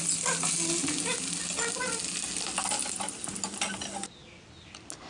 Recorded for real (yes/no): yes